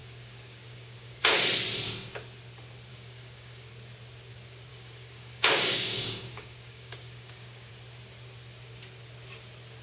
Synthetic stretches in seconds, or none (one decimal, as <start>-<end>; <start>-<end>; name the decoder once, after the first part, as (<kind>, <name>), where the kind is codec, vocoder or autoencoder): 0.0-1.2 (codec, DAC); 2.9-3.7; 4.7-7.7